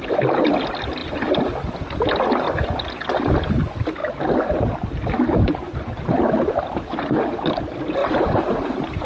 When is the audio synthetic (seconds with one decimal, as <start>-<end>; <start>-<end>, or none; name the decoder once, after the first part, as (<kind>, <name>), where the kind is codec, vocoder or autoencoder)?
8.0-9.1 (vocoder, BigVGAN v2)